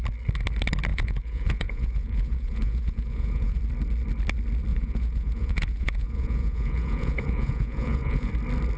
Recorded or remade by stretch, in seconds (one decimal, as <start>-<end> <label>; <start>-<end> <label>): 0.0-0.9 recorded; 0.9-3.6 remade; 3.6-4.7 recorded; 4.7-8.3 remade; 8.3-8.8 recorded

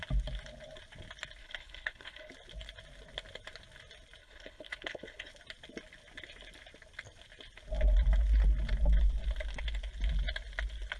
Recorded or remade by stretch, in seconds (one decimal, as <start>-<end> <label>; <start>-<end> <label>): 0.0-1.4 recorded; 1.4-2.3 remade; 2.3-4.2 recorded; 4.2-5.3 remade; 5.3-11.0 recorded

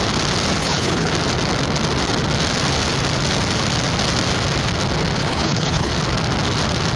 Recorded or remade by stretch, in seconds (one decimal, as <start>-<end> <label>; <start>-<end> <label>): 0.0-0.6 recorded; 0.6-1.1 remade; 1.1-5.2 recorded; 5.2-5.9 remade; 5.9-7.0 recorded

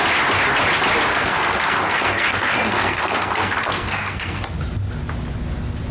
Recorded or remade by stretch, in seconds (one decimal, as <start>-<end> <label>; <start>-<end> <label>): 0.0-1.1 recorded; 1.1-4.4 remade; 4.4-5.9 recorded

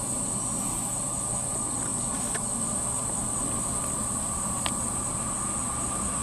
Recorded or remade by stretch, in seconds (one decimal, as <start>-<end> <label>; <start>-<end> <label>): 0.0-6.2 recorded